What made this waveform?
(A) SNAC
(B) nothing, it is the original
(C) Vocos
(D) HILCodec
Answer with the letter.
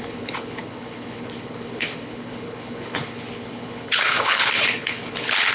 D